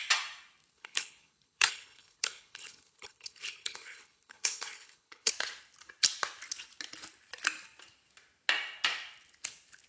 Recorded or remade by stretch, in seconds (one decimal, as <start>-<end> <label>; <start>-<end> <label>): 0.0-0.7 recorded; 0.7-5.3 remade; 5.3-9.9 recorded